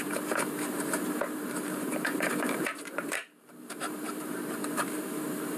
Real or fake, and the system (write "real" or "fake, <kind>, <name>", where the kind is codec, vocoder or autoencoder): fake, vocoder, BigVGAN v2